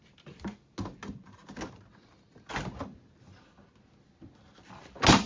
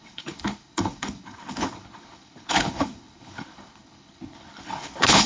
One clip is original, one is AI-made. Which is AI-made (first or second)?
second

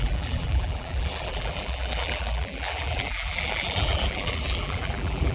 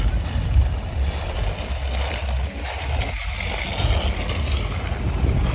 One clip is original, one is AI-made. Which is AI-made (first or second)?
first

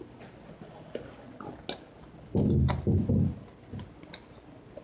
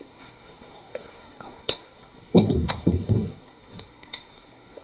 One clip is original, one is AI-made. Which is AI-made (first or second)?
second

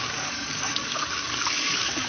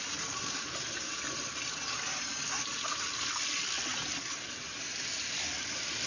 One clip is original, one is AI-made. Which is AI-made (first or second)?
first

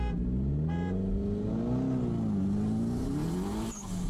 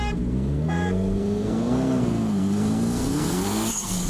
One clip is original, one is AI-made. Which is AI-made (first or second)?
second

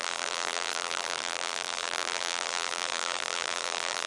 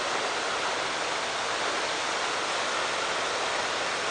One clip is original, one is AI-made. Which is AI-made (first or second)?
first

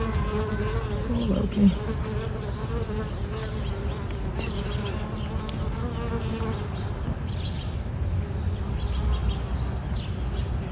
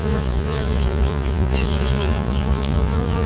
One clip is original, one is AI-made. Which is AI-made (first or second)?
second